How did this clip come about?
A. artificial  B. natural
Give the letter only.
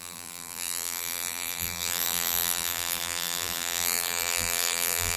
A